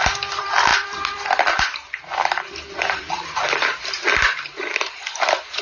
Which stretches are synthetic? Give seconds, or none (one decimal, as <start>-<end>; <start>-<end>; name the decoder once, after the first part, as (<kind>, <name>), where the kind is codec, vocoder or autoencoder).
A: 0.0-5.6 (vocoder, BigVGAN v2)